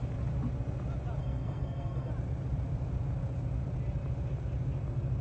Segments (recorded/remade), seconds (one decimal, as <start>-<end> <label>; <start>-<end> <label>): 0.0-1.2 recorded; 1.2-2.1 remade; 2.1-5.2 recorded